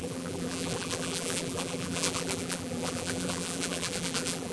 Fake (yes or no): yes